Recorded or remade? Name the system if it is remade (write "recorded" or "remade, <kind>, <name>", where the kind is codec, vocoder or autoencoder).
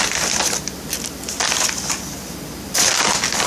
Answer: recorded